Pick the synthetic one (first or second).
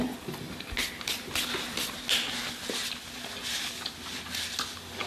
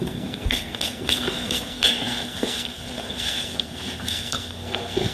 second